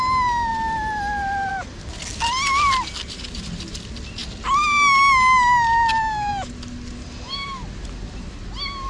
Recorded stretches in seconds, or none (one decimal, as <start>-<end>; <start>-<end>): 0.0-8.9